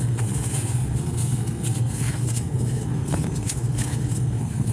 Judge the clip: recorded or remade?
remade